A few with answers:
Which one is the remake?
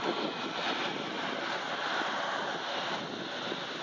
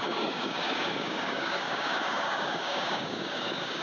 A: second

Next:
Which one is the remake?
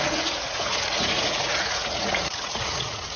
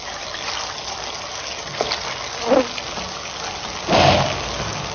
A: first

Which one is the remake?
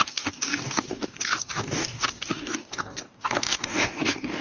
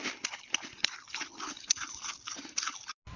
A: first